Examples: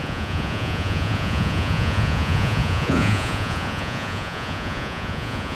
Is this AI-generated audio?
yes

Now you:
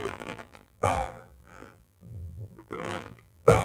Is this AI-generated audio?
yes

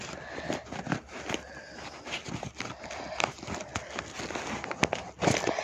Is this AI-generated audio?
no